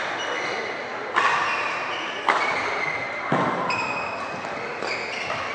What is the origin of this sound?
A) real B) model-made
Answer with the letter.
A